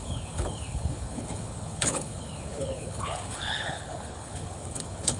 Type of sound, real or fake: fake